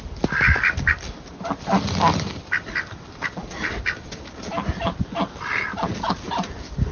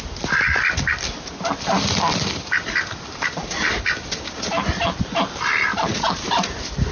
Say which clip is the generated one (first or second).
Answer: second